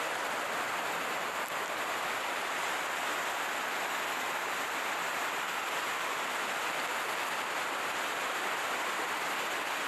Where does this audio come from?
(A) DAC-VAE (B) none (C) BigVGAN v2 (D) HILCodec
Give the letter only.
B